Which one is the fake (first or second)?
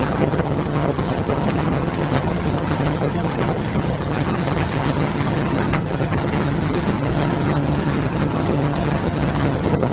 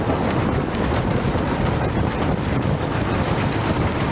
first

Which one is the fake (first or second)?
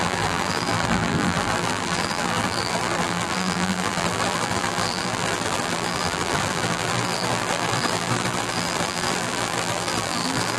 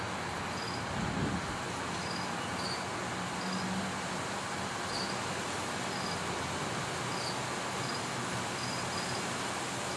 first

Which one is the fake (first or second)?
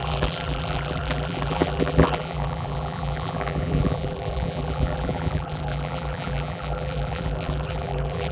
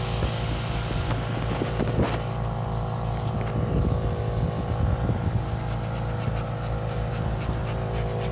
first